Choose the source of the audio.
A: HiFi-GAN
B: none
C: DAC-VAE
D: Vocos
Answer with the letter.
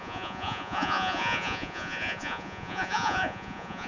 D